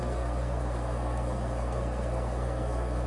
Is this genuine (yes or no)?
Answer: no